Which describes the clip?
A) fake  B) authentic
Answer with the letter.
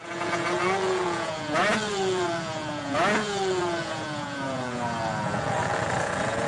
A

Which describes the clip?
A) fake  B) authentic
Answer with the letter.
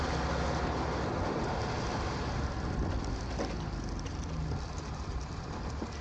B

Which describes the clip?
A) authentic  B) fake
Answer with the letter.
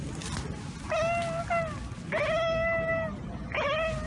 A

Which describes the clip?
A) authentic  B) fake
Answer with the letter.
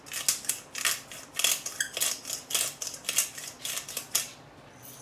A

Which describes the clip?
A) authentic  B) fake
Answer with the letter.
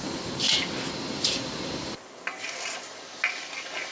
A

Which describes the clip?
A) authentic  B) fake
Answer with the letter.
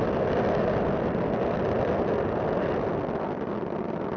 A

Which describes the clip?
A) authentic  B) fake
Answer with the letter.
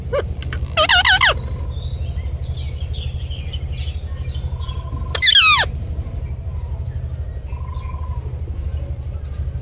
A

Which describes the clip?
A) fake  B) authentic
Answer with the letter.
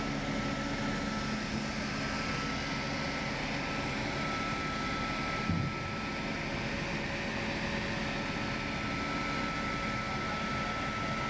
B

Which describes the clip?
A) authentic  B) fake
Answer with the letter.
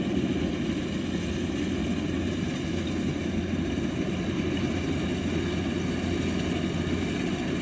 A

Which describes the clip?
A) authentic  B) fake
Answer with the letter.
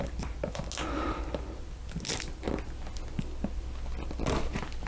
A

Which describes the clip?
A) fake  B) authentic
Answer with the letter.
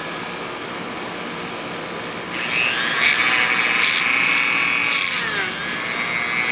B